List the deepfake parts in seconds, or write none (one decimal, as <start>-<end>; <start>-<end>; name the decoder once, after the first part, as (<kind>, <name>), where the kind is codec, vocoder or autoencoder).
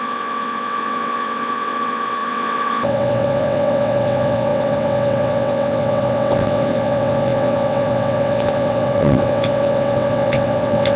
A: 0.0-11.0 (vocoder, WaveNeXt)